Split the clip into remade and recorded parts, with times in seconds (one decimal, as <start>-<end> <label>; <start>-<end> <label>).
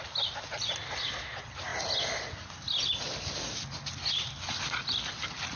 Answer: 0.0-5.6 recorded